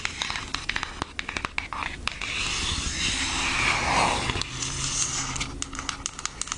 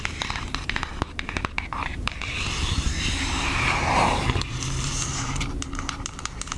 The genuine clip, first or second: first